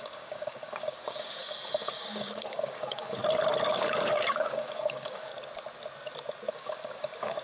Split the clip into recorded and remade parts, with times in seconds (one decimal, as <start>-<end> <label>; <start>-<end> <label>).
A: 0.0-1.4 remade; 1.4-1.9 recorded; 1.9-3.2 remade; 3.2-3.7 recorded; 3.7-5.3 remade; 5.3-6.5 recorded; 6.5-7.4 remade